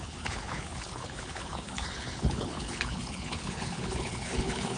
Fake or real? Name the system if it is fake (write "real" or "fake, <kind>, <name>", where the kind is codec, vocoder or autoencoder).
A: fake, codec, HILCodec